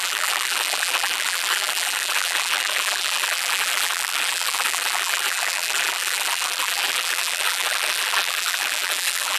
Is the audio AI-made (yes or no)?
yes